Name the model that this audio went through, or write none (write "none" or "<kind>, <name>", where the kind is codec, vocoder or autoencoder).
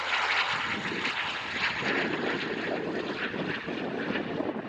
none